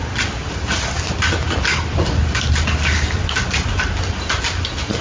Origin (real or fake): real